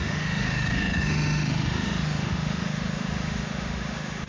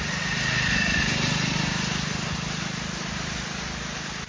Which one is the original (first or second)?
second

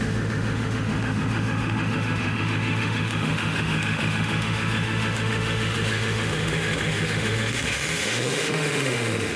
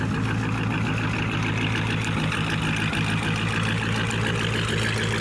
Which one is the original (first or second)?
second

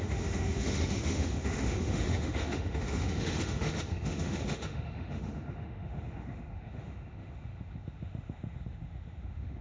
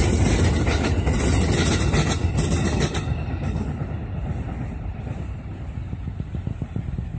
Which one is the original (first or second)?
second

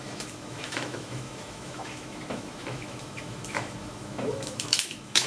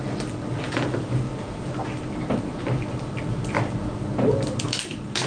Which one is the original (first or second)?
second